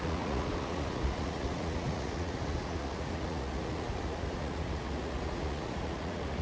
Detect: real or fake fake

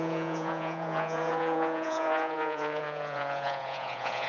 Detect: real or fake fake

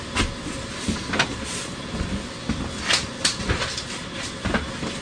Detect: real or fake real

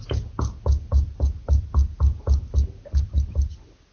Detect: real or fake real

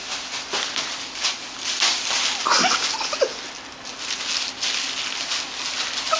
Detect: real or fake real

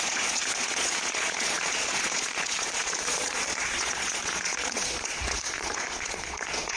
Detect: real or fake fake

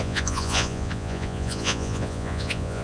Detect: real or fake fake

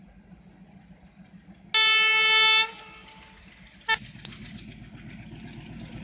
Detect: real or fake real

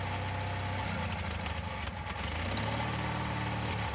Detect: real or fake real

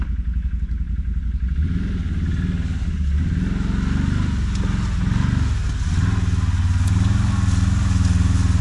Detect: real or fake real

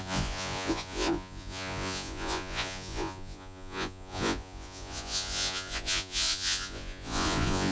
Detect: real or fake fake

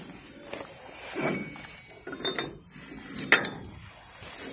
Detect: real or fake real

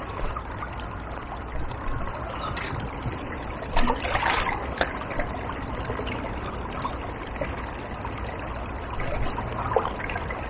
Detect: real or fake real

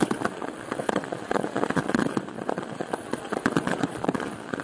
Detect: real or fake fake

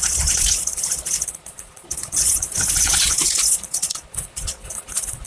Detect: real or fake fake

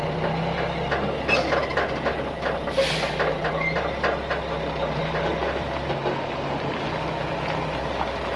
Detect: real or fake real